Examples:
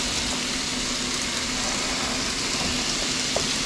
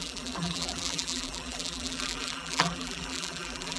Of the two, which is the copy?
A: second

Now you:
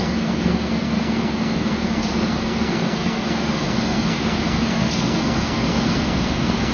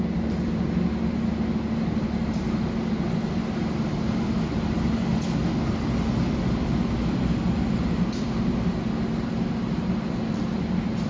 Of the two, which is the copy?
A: first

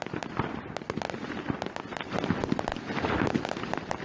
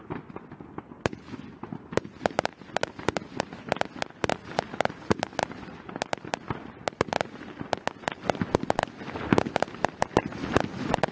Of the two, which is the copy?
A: first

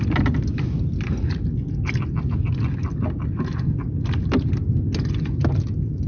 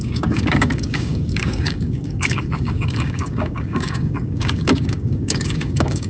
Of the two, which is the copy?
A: second